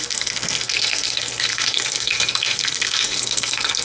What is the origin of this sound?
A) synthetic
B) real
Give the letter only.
A